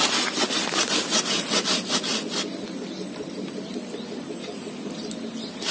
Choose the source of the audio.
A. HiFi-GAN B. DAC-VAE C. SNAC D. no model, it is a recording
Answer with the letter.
D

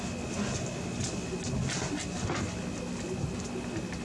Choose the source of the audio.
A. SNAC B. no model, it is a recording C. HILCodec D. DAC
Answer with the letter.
B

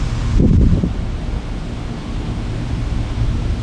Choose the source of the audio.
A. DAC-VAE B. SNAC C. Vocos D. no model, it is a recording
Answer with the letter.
D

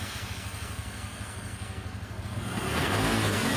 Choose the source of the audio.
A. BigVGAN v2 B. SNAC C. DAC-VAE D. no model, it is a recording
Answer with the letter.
B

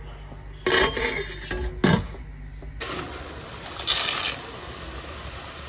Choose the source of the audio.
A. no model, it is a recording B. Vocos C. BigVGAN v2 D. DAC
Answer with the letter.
A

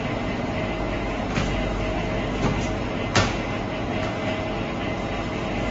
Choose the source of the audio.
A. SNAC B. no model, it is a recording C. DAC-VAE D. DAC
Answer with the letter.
B